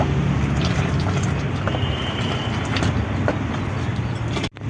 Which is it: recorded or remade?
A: recorded